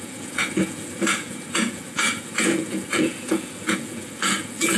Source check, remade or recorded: remade